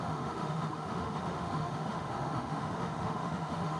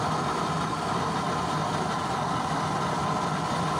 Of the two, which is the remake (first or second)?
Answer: first